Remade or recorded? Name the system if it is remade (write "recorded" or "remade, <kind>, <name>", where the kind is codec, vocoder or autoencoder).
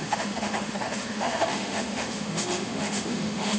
remade, autoencoder, DAC-VAE